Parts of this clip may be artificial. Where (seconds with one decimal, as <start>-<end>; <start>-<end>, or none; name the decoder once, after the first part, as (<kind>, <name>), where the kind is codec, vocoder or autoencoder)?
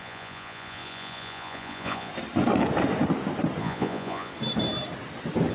0.0-2.1 (vocoder, Vocos); 3.6-4.3